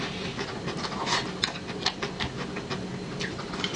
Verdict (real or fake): real